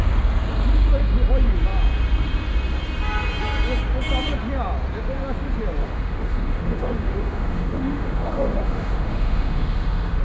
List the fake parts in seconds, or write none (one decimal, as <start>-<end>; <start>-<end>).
5.8-10.2